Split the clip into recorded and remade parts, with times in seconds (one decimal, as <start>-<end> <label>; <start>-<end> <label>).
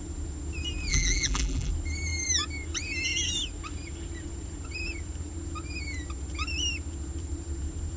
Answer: 0.0-0.9 recorded; 0.9-1.7 remade; 1.7-8.0 recorded